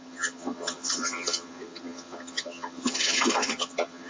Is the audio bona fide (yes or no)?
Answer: no